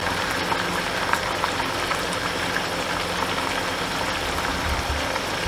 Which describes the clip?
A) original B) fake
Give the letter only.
A